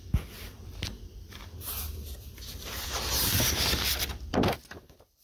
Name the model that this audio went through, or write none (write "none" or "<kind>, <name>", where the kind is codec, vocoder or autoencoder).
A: vocoder, BigVGAN v2